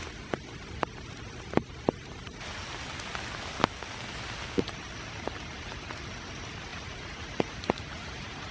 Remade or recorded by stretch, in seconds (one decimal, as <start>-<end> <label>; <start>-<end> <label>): 0.0-6.7 recorded; 6.7-8.5 remade